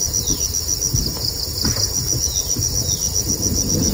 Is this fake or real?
real